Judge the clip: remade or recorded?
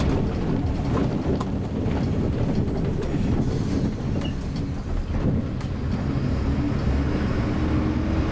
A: recorded